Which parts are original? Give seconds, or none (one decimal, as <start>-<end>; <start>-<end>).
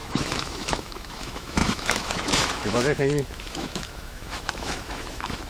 none